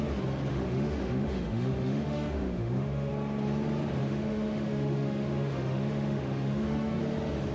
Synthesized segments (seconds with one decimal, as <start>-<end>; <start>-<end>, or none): 0.5-3.1; 4.0-7.0